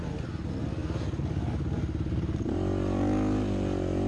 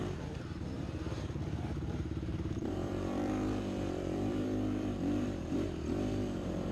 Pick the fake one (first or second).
second